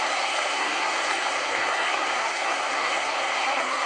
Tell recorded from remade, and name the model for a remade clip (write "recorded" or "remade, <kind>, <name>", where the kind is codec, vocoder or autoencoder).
remade, codec, SNAC